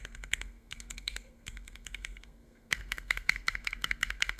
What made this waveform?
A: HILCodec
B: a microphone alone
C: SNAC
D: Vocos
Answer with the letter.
C